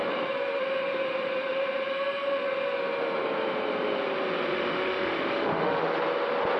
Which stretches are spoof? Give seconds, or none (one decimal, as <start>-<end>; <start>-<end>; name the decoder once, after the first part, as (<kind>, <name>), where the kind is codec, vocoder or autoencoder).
4.5-5.8 (autoencoder, DAC-VAE)